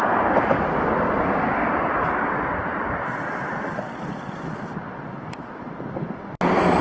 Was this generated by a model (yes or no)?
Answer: no